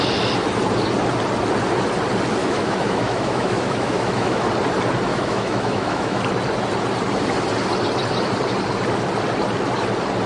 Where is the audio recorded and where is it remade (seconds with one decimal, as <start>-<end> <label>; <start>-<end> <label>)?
0.0-2.4 recorded; 2.4-4.5 remade; 4.5-5.1 recorded; 5.1-6.2 remade; 6.2-10.3 recorded